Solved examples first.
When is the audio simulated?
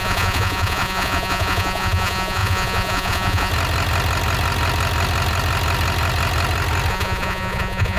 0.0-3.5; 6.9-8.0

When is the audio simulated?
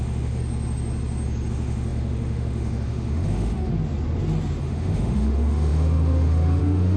0.0-0.4; 1.5-3.7; 4.6-7.0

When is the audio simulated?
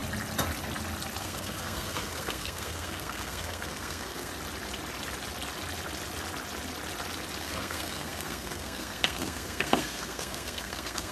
1.2-4.3; 7.4-11.1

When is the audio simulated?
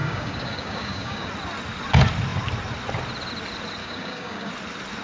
0.0-1.3; 3.8-4.5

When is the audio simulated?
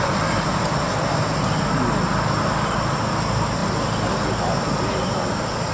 none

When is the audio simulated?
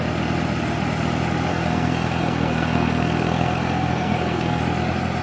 1.5-4.6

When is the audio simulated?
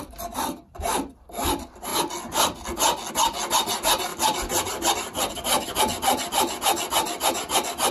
4.1-5.8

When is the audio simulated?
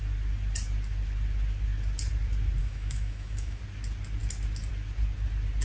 2.6-3.6